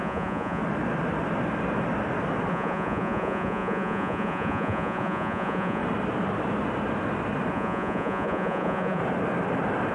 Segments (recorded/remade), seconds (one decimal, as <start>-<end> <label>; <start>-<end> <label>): 0.0-0.6 remade; 0.6-2.5 recorded; 2.5-5.8 remade; 5.8-7.5 recorded; 7.5-9.0 remade; 9.0-9.9 recorded